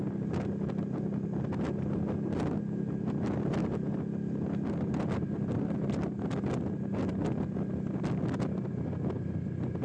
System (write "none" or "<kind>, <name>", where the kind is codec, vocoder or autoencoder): none